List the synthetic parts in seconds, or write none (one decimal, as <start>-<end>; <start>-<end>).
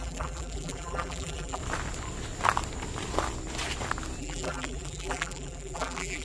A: 0.0-1.6; 4.2-6.2